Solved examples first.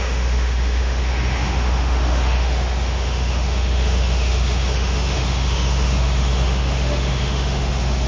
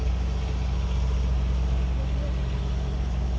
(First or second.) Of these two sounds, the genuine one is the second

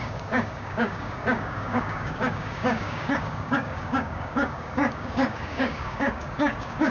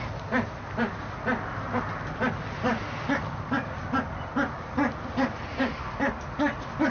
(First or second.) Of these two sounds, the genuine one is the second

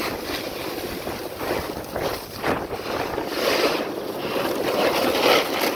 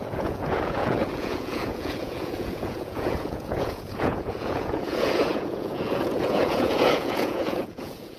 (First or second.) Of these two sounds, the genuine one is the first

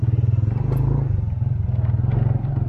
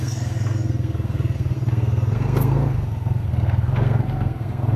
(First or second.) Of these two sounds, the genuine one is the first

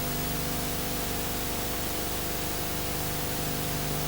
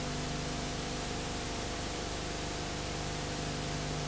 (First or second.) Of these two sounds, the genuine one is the first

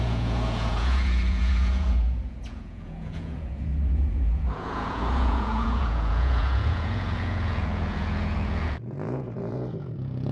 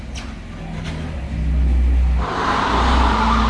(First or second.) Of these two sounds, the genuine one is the second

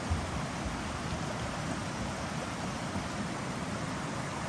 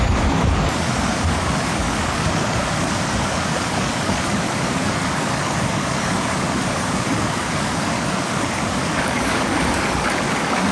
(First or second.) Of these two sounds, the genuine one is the first